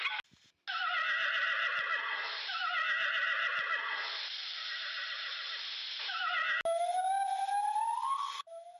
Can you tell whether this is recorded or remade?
recorded